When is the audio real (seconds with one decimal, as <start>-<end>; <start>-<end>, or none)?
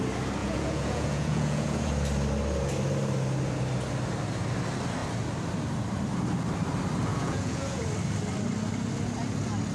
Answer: 0.0-0.4; 1.9-7.1; 7.8-9.7